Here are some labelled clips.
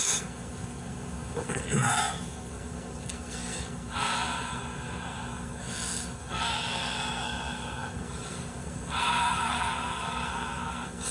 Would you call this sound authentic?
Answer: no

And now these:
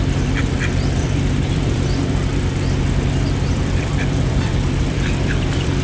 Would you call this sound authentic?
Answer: no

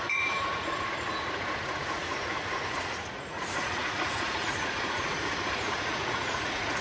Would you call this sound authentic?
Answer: no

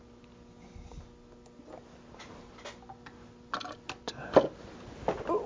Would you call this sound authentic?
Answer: yes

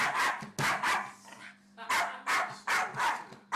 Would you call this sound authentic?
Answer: yes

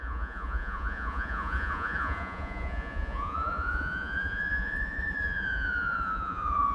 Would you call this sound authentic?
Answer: no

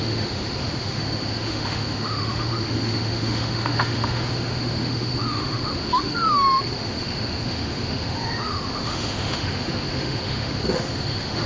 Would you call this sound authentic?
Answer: no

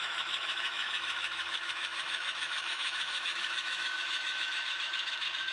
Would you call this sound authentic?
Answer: no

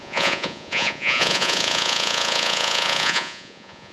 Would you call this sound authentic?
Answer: no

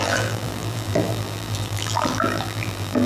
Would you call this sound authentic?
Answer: no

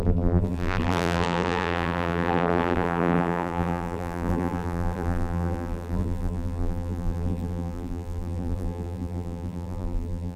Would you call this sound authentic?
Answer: no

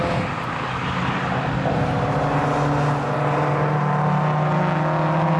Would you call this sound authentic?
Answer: yes